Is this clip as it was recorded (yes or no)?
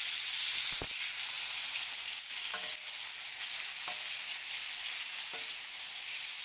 yes